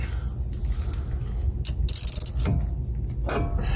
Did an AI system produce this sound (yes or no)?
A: no